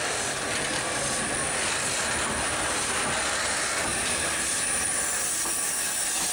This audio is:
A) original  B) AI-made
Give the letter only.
A